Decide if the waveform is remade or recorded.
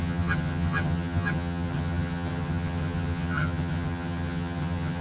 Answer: remade